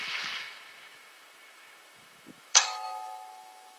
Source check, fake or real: fake